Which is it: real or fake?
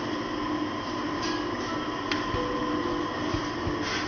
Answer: real